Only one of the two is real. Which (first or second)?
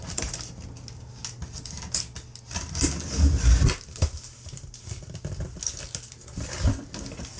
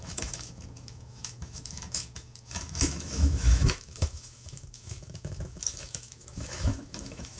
first